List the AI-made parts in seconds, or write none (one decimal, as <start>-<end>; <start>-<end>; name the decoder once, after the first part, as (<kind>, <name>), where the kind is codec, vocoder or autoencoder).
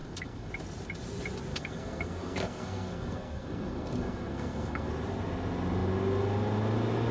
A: 0.0-0.5 (codec, SNAC); 1.5-4.9